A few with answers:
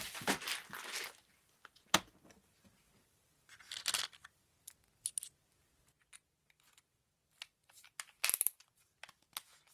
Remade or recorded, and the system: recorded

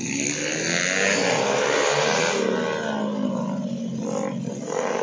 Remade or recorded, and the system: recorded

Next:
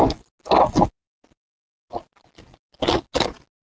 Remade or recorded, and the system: recorded